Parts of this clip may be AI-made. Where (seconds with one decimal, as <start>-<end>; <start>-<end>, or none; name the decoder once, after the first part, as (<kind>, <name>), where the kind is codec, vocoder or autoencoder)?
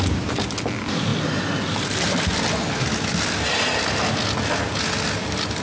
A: none